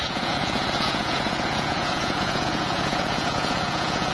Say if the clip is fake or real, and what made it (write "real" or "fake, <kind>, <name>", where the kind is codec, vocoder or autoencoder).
fake, vocoder, Vocos